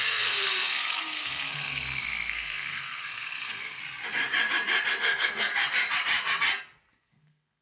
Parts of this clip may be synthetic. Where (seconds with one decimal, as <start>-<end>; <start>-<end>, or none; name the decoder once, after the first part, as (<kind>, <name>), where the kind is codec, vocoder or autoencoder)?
0.0-3.8 (codec, SNAC); 5.0-5.5; 7.0-7.6